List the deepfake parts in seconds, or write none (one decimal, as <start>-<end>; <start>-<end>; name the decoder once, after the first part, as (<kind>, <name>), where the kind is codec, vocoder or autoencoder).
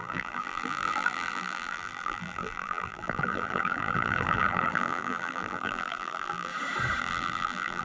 0.0-6.5 (vocoder, BigVGAN v2); 7.0-7.8